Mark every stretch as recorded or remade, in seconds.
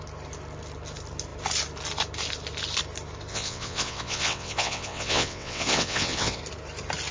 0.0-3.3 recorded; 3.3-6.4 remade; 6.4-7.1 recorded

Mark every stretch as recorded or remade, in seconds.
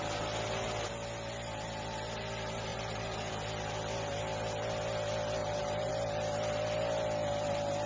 0.0-2.7 recorded; 2.7-3.3 remade; 3.3-5.4 recorded; 5.4-5.9 remade; 5.9-7.9 recorded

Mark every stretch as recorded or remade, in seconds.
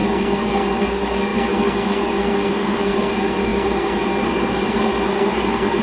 0.0-5.8 remade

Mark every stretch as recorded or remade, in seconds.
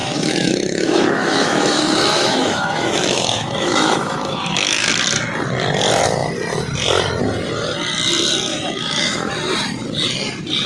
0.0-4.9 remade; 4.9-8.5 recorded; 8.5-9.3 remade; 9.3-10.7 recorded